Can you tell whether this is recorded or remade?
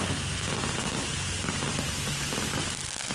recorded